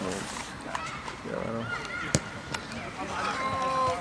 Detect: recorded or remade recorded